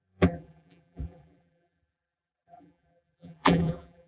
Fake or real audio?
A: fake